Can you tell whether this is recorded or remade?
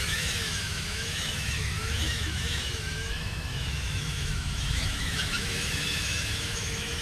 remade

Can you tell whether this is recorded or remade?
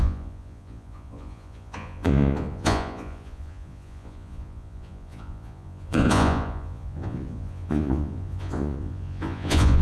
remade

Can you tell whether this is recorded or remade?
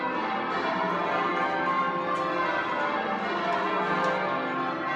recorded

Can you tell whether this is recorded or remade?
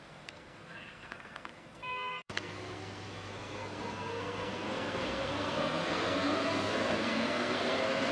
remade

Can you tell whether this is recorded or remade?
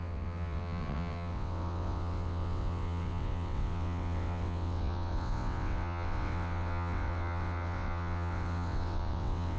remade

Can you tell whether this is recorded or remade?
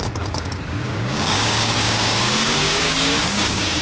remade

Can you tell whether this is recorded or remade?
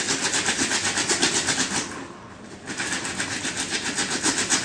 recorded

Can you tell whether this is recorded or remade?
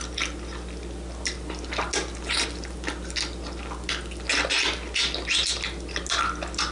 recorded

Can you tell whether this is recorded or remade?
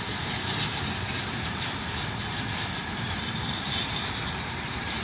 remade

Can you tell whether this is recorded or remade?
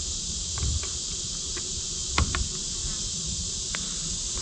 recorded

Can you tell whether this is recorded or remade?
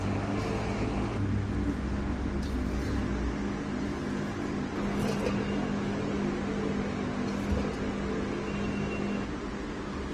recorded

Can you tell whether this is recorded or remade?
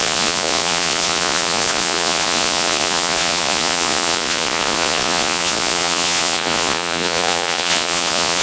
remade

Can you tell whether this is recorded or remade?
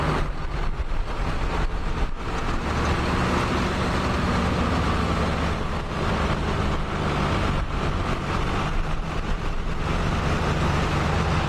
recorded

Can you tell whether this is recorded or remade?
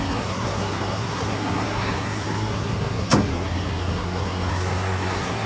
remade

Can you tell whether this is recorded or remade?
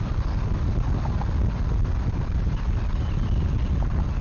recorded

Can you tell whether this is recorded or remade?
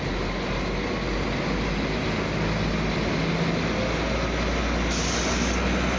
recorded